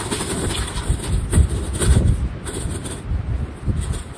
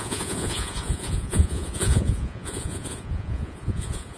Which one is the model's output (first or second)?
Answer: second